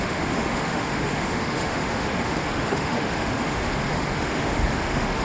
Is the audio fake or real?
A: fake